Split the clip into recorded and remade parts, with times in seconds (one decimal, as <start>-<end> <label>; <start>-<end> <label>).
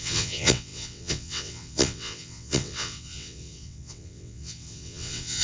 0.0-5.4 remade